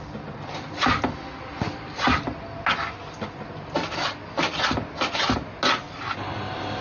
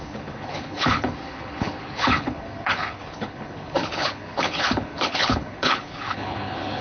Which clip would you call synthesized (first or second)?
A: second